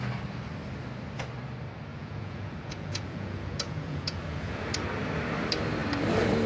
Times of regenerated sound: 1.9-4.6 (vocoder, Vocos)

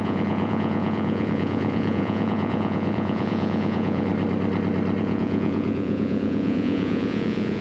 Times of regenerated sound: 0.0-4.1 (vocoder, Vocos); 5.0-7.6

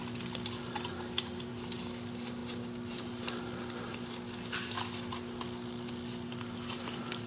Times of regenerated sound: none